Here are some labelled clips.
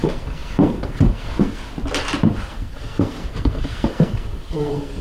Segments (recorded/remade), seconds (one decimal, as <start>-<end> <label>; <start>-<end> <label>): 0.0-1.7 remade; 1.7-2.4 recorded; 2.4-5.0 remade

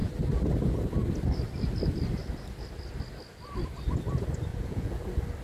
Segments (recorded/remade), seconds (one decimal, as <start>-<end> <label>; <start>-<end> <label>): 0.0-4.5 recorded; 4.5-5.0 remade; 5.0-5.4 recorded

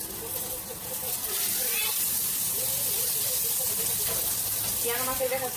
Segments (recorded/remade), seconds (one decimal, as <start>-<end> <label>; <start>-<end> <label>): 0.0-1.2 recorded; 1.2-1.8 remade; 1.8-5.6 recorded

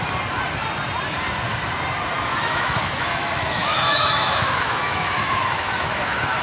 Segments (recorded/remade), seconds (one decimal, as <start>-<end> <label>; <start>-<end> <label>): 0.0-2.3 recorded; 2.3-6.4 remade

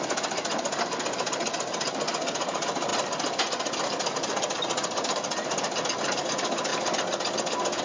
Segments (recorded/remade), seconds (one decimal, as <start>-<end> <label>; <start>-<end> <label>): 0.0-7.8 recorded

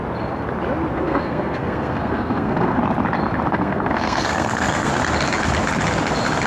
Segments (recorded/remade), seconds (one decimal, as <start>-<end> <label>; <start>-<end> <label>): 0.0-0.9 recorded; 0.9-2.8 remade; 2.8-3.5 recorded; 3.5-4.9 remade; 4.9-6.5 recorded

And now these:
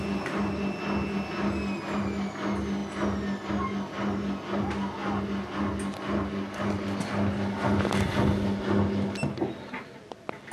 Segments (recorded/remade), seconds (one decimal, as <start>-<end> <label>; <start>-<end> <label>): 0.0-10.5 recorded

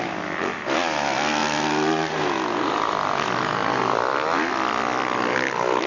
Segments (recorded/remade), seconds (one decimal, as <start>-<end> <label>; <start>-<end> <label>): 0.0-5.9 recorded